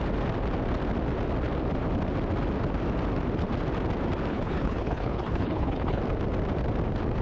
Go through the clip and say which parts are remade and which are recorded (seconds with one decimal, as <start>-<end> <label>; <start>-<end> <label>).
0.0-4.3 recorded; 4.3-6.0 remade; 6.0-7.2 recorded